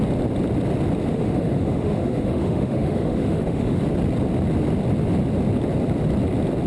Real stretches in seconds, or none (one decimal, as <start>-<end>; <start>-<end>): 0.0-1.1; 3.8-6.7